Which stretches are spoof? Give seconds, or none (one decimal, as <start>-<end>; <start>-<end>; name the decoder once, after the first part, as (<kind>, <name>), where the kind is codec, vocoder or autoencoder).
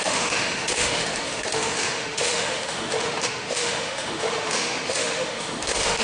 0.0-6.0 (autoencoder, DAC-VAE)